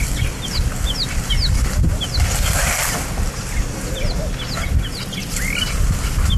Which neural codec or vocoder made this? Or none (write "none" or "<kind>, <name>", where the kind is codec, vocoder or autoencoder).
none